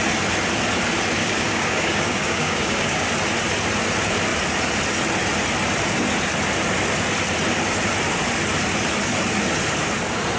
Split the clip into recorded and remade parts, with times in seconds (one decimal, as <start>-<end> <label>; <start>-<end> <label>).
0.0-1.2 recorded; 1.2-3.1 remade; 3.1-10.4 recorded